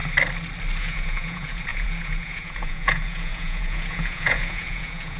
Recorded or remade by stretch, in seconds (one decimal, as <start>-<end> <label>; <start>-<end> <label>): 0.0-0.8 recorded; 0.8-5.2 remade